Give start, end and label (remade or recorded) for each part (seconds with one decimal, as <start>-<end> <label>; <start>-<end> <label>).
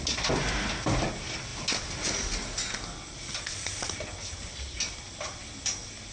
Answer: 0.0-6.1 recorded